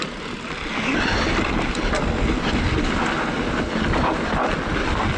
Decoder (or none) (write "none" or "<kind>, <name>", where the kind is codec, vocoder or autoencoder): none